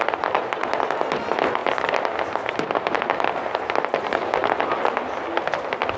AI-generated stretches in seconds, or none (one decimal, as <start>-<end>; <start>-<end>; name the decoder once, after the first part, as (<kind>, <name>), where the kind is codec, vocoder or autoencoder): none